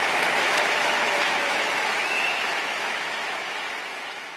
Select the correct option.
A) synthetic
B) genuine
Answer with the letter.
A